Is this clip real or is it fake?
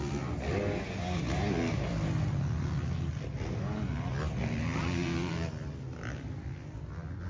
real